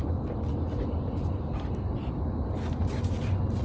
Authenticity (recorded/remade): recorded